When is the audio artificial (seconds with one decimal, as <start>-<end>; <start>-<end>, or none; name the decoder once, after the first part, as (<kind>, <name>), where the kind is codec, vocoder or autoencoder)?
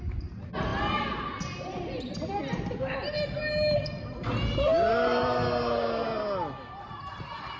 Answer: none